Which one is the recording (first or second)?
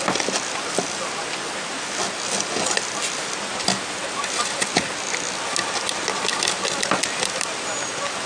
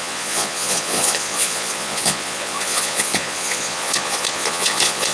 first